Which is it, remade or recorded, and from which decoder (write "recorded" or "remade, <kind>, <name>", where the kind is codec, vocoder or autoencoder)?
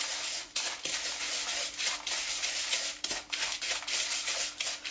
recorded